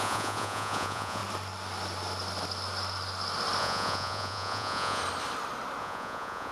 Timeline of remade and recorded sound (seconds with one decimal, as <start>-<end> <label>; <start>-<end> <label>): 0.0-1.2 remade; 1.2-3.6 recorded; 3.6-5.0 remade; 5.0-5.8 recorded; 5.8-6.5 remade